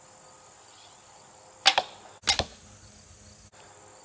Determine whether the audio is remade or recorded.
recorded